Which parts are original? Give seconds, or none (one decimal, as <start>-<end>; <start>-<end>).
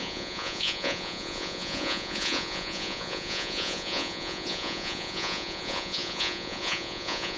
none